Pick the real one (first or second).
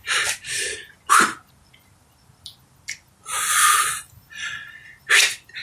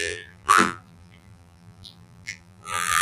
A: first